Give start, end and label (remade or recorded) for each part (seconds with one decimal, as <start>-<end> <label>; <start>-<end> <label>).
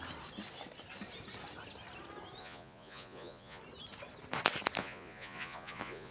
0.0-2.4 recorded; 2.4-3.6 remade; 3.6-4.8 recorded; 4.8-6.1 remade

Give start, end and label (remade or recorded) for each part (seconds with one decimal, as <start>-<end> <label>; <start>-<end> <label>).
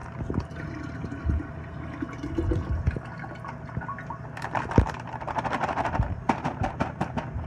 0.0-7.5 recorded